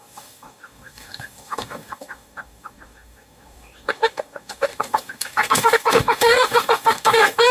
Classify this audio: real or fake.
fake